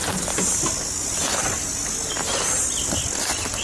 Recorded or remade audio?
recorded